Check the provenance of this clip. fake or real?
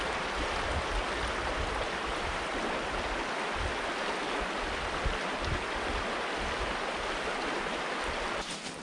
real